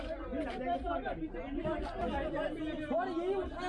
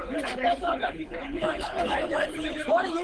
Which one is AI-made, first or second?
second